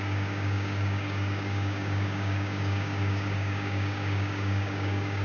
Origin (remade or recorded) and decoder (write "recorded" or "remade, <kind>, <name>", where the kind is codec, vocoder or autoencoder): remade, codec, DAC